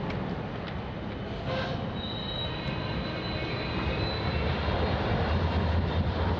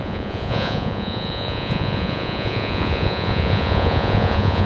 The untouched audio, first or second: first